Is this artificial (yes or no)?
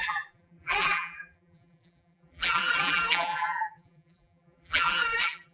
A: yes